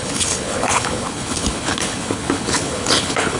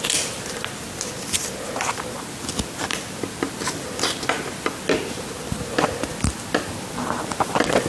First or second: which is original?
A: second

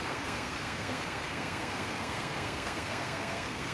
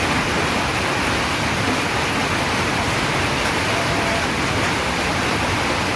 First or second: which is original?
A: second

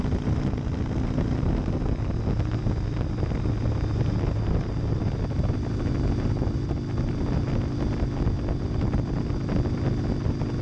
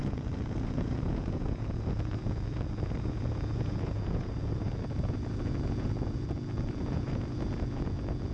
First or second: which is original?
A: first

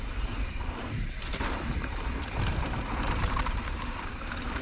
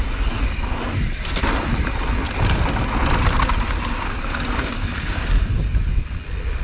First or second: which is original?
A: second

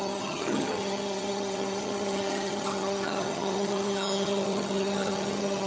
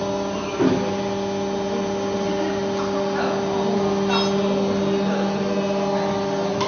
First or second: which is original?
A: second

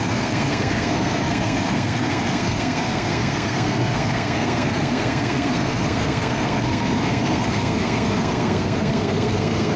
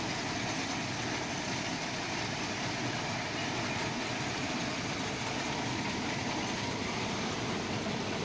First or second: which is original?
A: second